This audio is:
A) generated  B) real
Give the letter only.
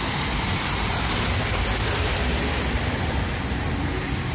B